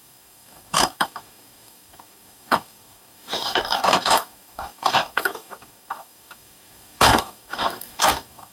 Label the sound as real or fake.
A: fake